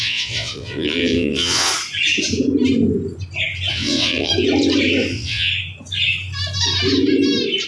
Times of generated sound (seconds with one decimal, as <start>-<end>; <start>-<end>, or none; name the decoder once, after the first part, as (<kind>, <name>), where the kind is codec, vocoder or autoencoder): 0.0-1.7 (vocoder, WaveNeXt); 3.7-4.3; 5.1-5.5